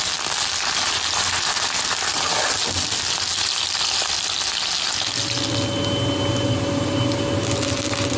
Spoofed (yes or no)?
no